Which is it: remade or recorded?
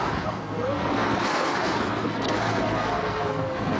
remade